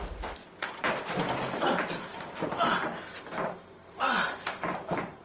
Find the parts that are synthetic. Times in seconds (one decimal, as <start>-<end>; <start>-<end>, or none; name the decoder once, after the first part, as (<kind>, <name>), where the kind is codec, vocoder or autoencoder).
0.0-0.4 (vocoder, BigVGAN v2); 3.2-5.2